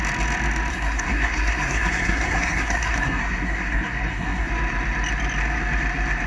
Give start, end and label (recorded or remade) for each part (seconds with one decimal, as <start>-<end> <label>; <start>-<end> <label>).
0.0-0.7 recorded; 0.7-4.5 remade; 4.5-6.3 recorded